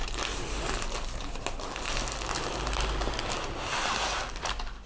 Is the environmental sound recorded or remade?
recorded